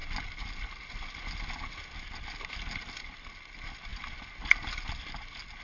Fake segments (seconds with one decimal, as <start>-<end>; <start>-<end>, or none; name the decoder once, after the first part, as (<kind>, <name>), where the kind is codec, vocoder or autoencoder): none